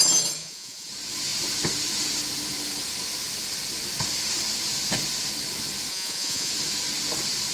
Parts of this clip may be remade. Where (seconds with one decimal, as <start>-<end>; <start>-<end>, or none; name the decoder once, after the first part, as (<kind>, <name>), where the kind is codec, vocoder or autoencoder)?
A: 0.4-0.9 (vocoder, Vocos); 5.9-6.5

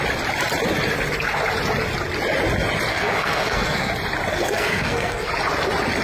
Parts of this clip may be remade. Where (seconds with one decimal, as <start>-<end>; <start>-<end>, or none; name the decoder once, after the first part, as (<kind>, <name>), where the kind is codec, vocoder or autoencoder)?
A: 2.9-3.9 (codec, SNAC); 4.3-5.3

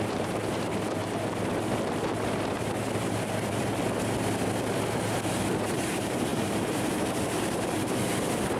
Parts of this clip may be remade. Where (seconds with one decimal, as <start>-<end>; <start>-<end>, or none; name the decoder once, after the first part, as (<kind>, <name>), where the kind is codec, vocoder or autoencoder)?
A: 0.0-1.0 (vocoder, BigVGAN v2); 5.3-8.6